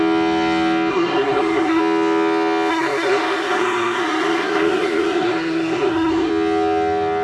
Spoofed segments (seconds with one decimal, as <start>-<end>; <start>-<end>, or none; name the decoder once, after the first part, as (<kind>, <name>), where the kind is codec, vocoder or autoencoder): 0.9-1.8 (codec, SNAC); 2.7-6.3